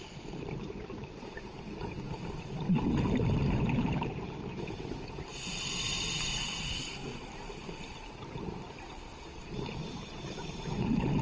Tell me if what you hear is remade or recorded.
remade